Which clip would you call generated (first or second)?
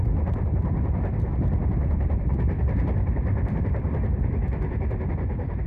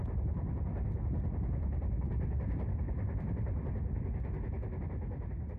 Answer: first